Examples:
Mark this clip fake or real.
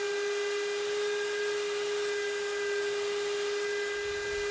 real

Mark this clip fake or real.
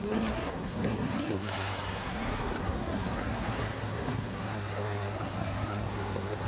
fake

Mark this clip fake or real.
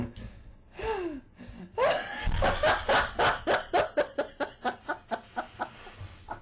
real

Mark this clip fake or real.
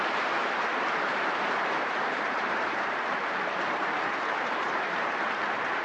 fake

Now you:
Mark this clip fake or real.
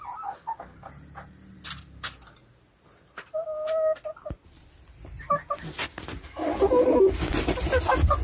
real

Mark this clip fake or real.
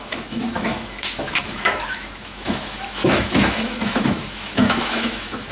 fake